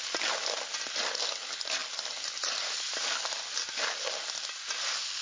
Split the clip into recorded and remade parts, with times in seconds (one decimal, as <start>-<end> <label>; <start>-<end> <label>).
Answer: 0.0-5.2 recorded